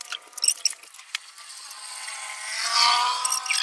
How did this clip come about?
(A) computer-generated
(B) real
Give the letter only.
B